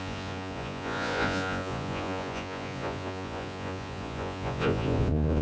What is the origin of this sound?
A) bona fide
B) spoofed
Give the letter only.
B